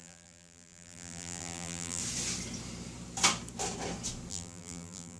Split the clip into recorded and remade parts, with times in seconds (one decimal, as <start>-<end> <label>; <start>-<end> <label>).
0.0-2.0 remade; 2.0-4.3 recorded; 4.3-5.2 remade